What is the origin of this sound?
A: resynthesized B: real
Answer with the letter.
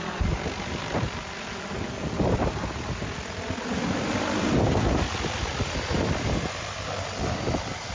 B